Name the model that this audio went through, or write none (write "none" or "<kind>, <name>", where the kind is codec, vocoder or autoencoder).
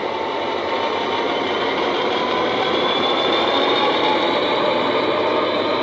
vocoder, BigVGAN v2